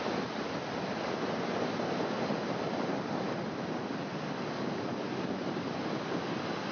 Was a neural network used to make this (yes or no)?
no